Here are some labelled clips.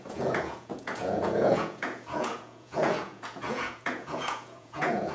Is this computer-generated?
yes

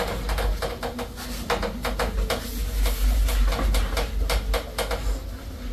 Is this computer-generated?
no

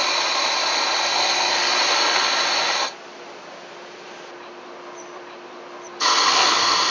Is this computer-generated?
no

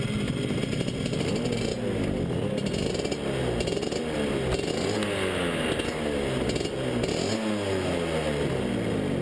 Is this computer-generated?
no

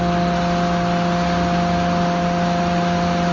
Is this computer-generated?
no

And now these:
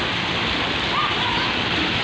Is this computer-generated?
no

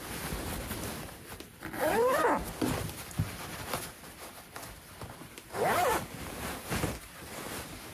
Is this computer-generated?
no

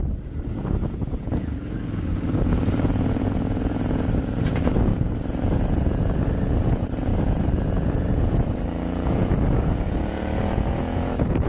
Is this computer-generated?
yes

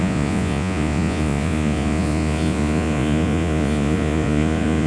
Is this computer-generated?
yes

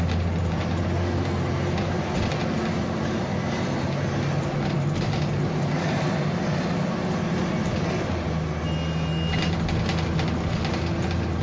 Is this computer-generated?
no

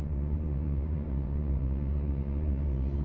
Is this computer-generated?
yes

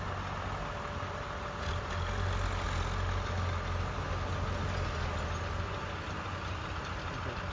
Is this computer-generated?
no